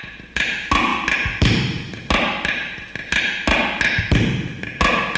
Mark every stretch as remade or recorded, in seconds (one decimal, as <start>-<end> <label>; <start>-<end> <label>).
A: 0.0-5.2 recorded